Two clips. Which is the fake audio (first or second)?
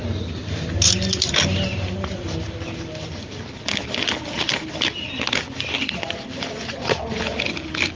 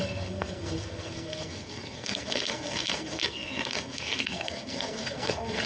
second